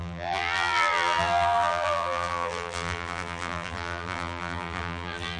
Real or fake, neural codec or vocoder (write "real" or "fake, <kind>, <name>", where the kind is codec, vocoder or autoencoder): fake, vocoder, BigVGAN v2